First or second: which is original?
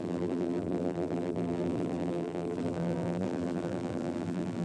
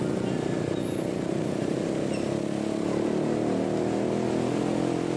second